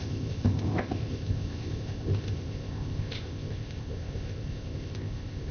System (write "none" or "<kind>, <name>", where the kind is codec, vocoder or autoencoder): codec, ZipCodec